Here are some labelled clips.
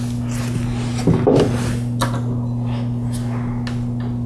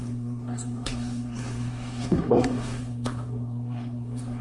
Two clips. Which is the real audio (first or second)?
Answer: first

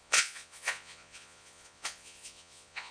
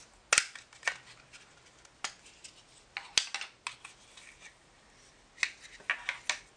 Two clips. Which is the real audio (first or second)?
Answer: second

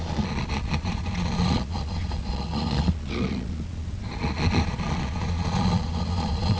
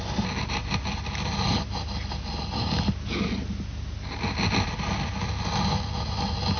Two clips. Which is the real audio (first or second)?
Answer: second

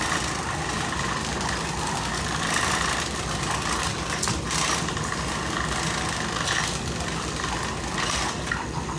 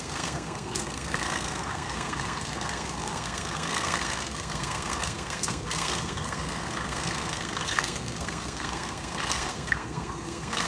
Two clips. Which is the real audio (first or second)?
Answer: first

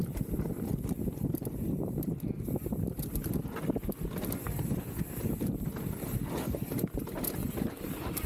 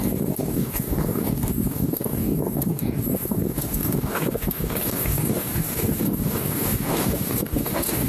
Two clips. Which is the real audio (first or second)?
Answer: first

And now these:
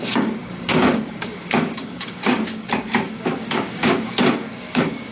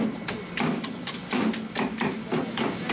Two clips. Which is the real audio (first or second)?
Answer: second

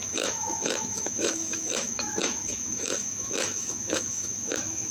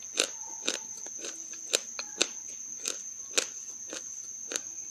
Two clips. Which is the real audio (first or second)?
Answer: second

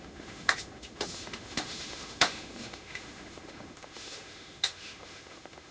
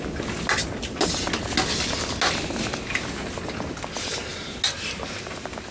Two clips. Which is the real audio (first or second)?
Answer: second